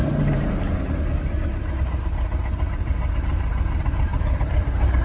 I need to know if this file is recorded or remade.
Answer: recorded